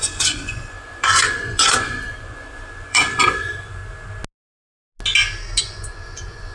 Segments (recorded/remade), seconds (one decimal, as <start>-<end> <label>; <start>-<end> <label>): 0.0-3.8 remade; 3.8-5.6 recorded; 5.6-6.5 remade